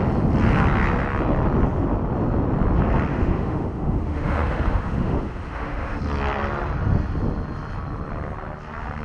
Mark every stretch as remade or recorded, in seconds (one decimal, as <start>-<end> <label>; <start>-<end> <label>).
0.0-3.1 recorded; 3.1-6.0 remade; 6.0-9.0 recorded